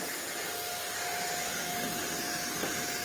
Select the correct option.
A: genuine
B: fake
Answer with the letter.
A